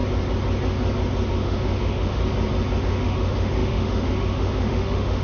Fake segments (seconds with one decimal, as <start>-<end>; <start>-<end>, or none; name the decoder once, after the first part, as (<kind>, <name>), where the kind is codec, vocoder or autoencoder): 1.3-2.2 (autoencoder, DAC-VAE); 2.8-5.2